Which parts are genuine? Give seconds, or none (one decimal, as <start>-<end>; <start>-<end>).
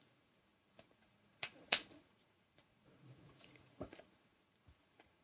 none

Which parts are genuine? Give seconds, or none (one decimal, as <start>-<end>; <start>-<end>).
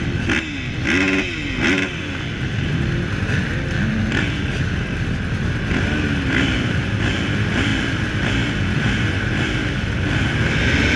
0.0-11.0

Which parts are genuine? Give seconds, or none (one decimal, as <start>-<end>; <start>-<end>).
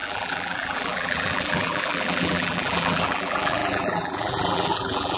none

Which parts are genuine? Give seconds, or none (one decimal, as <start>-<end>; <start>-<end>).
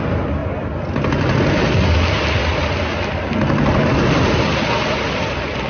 0.0-5.7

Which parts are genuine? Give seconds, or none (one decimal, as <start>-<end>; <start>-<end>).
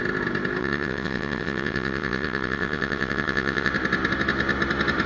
0.0-0.6; 3.7-5.1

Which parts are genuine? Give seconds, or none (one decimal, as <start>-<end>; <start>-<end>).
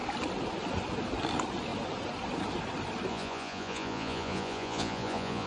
0.0-3.1